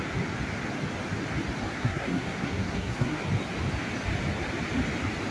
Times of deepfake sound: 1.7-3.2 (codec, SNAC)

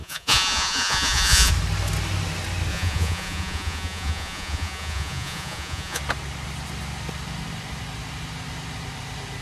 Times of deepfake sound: 0.0-1.5 (vocoder, Vocos); 2.7-6.0